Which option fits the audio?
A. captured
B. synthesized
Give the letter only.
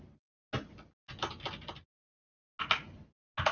A